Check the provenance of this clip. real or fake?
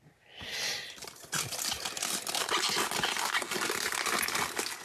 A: real